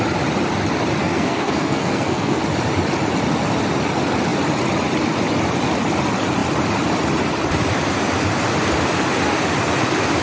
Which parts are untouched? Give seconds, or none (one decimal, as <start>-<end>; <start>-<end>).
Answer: 0.0-1.0; 2.4-10.2